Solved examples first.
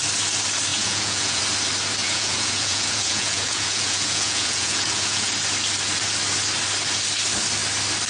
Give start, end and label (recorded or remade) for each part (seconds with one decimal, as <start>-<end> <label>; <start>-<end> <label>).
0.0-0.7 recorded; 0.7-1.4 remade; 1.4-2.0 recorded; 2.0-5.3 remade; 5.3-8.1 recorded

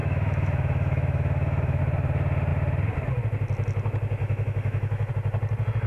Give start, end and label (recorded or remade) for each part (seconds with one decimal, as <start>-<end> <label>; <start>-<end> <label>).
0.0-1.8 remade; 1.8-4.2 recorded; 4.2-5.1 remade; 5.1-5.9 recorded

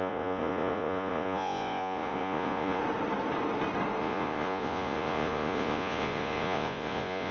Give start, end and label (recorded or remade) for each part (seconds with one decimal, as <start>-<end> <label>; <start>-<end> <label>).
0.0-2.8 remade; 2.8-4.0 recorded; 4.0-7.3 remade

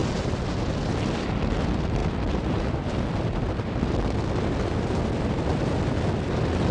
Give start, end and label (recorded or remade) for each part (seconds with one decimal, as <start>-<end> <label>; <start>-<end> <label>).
0.0-6.7 recorded

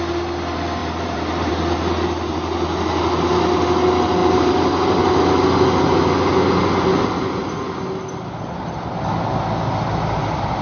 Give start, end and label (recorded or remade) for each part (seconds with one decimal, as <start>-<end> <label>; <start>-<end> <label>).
0.0-0.8 recorded; 0.8-1.5 remade; 1.5-4.2 recorded; 4.2-5.2 remade; 5.2-10.6 recorded